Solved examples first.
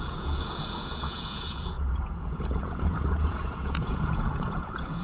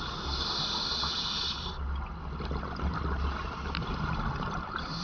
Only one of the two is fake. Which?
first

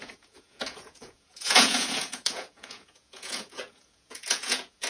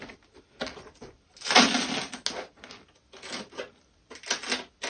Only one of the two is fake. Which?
first